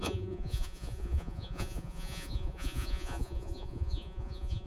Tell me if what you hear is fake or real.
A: fake